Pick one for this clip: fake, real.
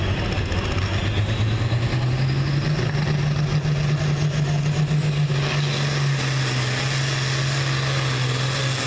real